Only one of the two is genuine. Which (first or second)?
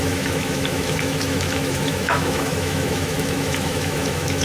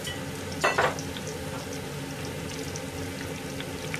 second